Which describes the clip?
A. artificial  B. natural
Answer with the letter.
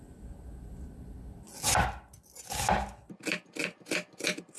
B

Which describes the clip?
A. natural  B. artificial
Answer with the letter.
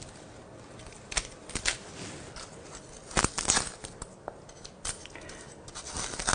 A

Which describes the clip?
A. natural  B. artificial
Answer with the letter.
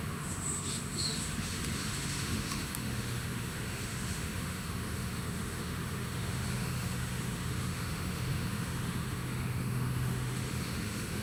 B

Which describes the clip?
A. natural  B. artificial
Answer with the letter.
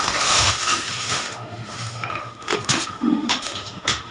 B